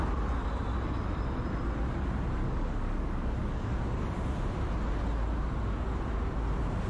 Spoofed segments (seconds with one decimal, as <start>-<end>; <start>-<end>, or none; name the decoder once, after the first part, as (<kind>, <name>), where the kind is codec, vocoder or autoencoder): 2.4-3.8 (codec, DAC)